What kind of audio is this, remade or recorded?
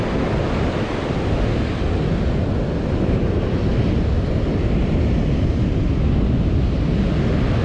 recorded